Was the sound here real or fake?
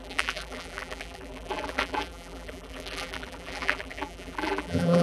fake